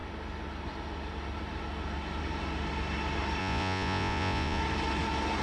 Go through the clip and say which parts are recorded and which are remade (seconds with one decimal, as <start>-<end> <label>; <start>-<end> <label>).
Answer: 0.0-3.4 recorded; 3.4-4.6 remade; 4.6-5.4 recorded